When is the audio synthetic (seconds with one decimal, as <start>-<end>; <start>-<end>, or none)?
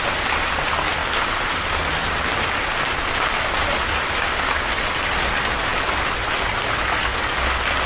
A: none